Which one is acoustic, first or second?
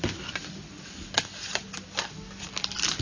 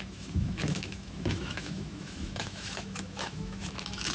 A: first